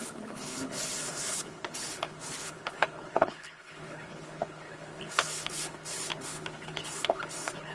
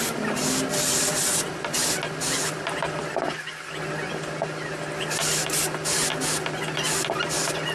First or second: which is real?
second